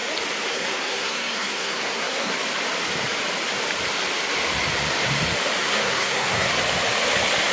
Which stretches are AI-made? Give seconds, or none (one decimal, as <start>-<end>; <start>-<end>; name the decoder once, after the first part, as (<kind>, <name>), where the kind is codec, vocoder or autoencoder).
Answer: 0.5-2.3 (codec, SNAC); 5.6-6.5